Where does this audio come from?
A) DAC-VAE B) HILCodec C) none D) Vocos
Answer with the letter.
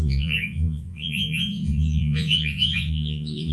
D